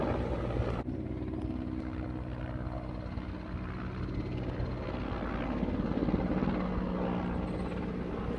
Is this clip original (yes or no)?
yes